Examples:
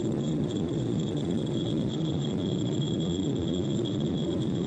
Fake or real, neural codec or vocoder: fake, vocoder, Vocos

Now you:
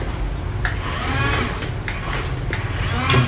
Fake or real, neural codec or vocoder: real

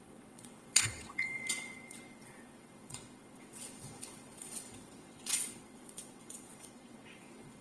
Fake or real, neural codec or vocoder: fake, vocoder, WaveNeXt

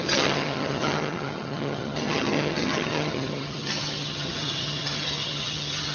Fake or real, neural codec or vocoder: fake, vocoder, HiFi-GAN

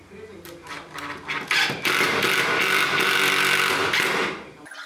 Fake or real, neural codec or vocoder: real